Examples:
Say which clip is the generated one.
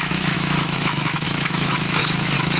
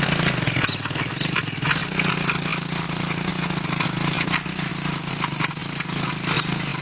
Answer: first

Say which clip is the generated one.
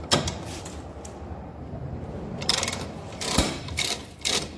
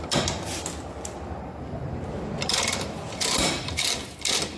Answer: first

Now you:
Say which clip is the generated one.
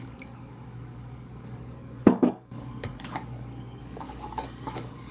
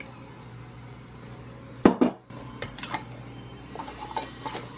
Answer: first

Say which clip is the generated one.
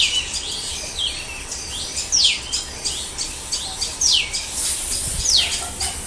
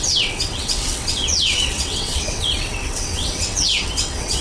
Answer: second